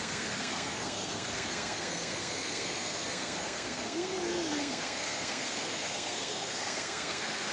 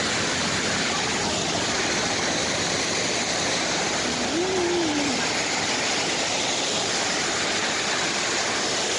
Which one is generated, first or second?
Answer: first